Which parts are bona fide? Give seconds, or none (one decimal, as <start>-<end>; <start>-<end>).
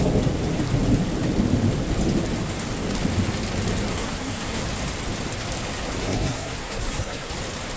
0.0-3.9; 4.6-6.0; 7.3-7.8